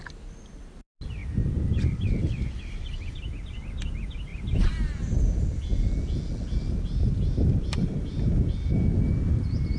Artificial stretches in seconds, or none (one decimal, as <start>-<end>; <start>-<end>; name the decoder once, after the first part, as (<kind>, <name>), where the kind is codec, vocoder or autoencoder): none